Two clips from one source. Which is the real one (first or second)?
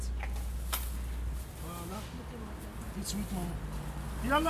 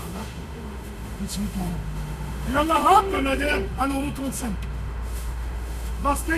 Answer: first